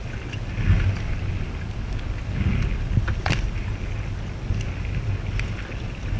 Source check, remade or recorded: recorded